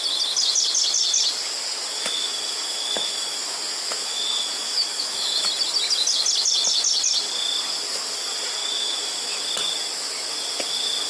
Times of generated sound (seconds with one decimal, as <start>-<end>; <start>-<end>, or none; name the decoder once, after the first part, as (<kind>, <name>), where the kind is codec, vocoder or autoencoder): 1.7-5.5 (autoencoder, DAC-VAE); 8.6-9.4